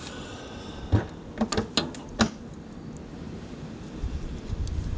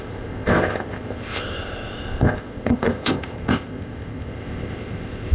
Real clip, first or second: first